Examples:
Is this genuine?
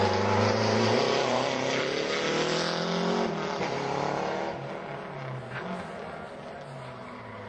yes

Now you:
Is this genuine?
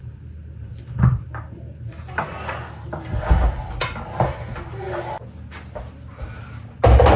yes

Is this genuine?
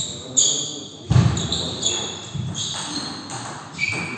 yes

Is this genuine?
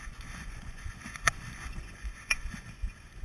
no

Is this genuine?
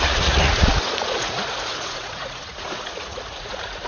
no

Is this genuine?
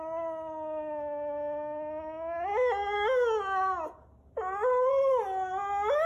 yes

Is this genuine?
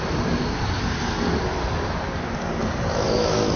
yes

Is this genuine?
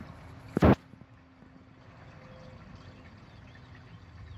yes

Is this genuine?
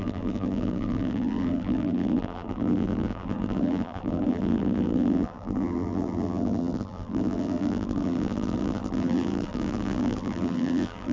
no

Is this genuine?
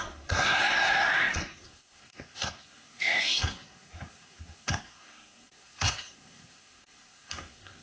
no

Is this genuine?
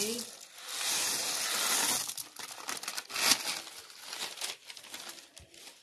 yes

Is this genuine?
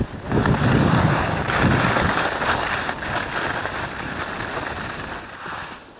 yes